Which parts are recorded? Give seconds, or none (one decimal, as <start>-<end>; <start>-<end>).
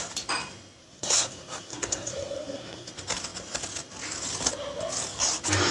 0.0-0.8; 2.9-5.7